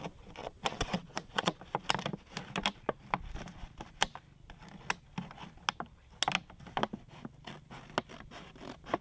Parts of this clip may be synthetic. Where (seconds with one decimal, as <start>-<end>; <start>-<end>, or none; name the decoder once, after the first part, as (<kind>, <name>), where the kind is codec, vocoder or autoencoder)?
0.4-1.6 (vocoder, Vocos)